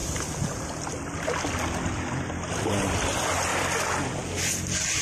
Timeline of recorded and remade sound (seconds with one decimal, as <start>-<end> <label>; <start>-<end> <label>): 0.0-5.0 recorded